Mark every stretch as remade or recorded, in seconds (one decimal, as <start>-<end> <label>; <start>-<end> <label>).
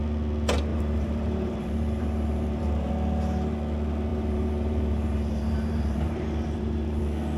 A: 0.0-0.7 recorded; 0.7-2.9 remade; 2.9-4.1 recorded; 4.1-7.0 remade; 7.0-7.4 recorded